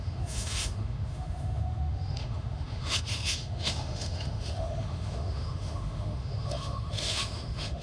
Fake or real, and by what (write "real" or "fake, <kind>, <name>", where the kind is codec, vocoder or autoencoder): fake, autoencoder, DAC-VAE